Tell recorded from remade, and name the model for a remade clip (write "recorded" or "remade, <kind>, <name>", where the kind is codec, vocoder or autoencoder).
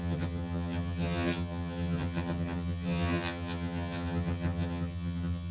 remade, vocoder, HiFi-GAN